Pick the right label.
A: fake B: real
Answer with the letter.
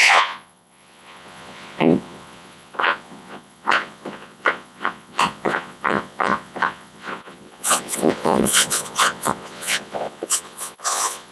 A